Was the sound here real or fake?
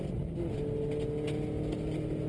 real